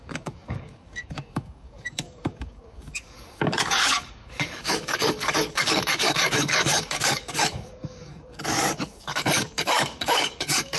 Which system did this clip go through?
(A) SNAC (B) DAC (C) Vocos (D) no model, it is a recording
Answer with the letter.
B